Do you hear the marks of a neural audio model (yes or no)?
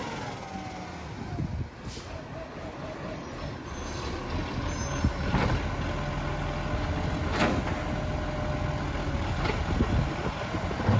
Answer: no